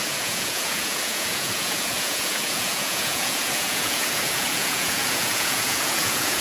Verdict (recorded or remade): remade